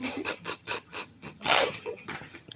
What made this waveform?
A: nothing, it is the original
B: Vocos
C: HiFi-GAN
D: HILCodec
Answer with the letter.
C